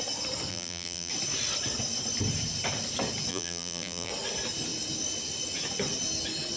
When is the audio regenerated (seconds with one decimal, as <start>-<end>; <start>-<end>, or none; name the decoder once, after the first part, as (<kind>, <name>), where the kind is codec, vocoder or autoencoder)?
0.5-1.1 (vocoder, BigVGAN v2); 3.3-4.1